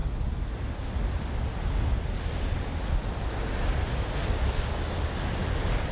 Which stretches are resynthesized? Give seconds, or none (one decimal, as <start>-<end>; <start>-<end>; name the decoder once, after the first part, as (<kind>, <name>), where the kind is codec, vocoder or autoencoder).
none

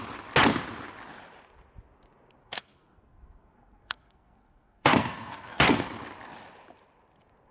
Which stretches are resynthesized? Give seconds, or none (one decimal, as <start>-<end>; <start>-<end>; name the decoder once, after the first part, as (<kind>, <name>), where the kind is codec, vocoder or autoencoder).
2.4-5.8 (codec, SNAC)

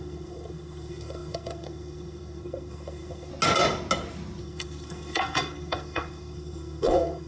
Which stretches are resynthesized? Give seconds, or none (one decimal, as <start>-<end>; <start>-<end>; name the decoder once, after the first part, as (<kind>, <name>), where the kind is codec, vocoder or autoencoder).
0.0-3.3 (codec, SNAC); 4.4-7.3

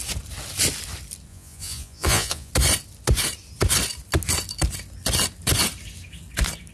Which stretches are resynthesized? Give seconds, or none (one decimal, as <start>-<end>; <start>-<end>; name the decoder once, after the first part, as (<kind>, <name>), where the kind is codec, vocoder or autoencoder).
1.3-2.5 (vocoder, Vocos)

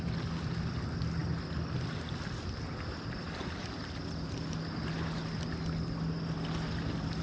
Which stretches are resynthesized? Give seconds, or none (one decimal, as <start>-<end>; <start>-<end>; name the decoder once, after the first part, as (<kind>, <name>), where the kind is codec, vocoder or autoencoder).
none